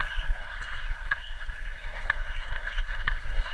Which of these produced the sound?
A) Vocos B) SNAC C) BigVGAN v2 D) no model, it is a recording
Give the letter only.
B